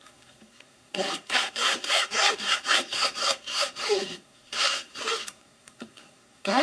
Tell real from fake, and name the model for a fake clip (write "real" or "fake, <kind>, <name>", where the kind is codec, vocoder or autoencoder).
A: fake, codec, SNAC